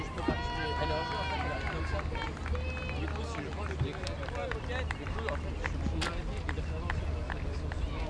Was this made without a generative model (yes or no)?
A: yes